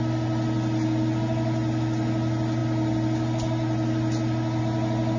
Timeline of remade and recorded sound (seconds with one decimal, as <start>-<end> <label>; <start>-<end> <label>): 0.0-5.2 recorded